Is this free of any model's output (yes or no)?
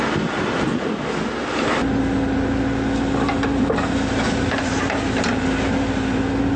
yes